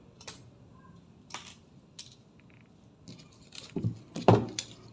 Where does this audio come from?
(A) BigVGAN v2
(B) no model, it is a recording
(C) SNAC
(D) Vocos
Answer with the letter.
B